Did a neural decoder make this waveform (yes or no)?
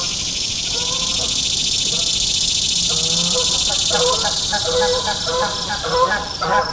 no